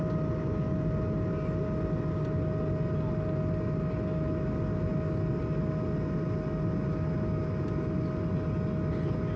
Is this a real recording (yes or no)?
yes